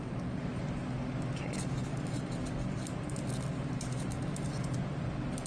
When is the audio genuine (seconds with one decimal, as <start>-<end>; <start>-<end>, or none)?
0.0-5.5